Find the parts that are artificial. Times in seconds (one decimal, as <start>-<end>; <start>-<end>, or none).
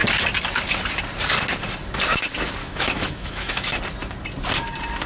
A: 2.6-3.8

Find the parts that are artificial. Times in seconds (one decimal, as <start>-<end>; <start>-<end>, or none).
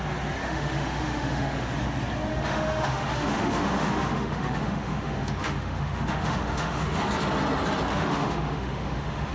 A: 0.4-1.7; 2.3-7.0; 7.9-9.3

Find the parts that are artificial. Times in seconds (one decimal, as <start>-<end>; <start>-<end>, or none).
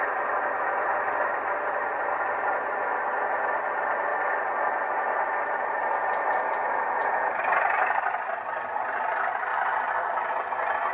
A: none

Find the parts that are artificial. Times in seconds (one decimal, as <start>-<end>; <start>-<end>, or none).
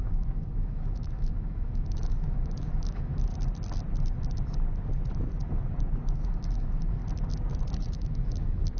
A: 0.0-3.3; 6.2-7.0; 7.8-8.8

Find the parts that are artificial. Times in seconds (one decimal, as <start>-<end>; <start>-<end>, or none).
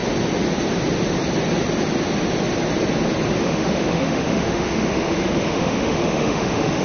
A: 3.4-6.8